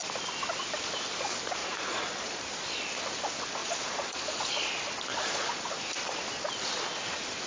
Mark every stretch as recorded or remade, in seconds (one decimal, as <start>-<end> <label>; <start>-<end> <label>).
0.0-1.6 recorded; 1.6-2.4 remade; 2.4-3.6 recorded; 3.6-4.6 remade; 4.6-5.1 recorded; 5.1-5.9 remade; 5.9-7.5 recorded